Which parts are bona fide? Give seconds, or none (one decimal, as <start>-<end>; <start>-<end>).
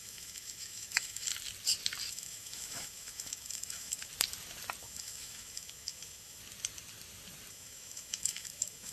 1.3-2.1; 4.1-4.8; 6.4-7.5